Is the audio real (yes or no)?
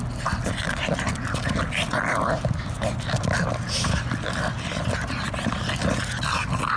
yes